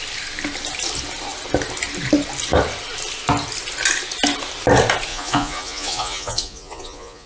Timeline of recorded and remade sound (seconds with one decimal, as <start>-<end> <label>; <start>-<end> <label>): 0.0-5.1 recorded; 5.1-7.3 remade

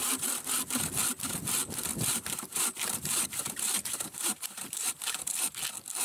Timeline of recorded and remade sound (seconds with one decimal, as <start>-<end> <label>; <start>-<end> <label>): 0.0-0.5 remade; 0.5-1.9 recorded; 1.9-5.5 remade; 5.5-6.0 recorded

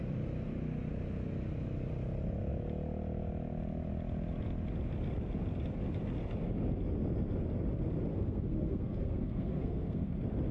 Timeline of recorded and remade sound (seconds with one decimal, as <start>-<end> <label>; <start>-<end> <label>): 0.0-8.1 recorded; 8.1-10.1 remade; 10.1-10.5 recorded

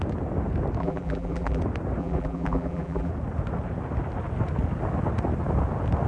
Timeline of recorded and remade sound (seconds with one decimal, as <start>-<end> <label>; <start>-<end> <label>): 0.0-0.8 recorded; 0.8-1.6 remade; 1.6-2.0 recorded; 2.0-3.1 remade; 3.1-6.1 recorded

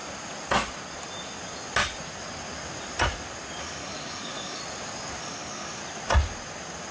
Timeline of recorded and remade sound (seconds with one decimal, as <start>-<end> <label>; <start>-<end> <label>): 0.0-3.6 recorded; 3.6-4.6 remade; 4.6-5.2 recorded; 5.2-5.8 remade; 5.8-6.9 recorded

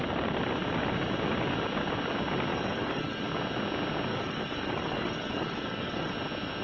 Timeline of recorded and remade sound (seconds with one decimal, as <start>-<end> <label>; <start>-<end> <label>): 0.0-2.5 recorded; 2.5-3.2 remade; 3.2-4.1 recorded; 4.1-6.1 remade; 6.1-6.6 recorded

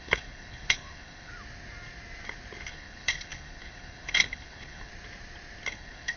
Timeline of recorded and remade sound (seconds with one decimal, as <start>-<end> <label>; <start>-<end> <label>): 0.0-1.3 remade; 1.3-2.7 recorded; 2.7-4.9 remade; 4.9-5.7 recorded; 5.7-6.2 remade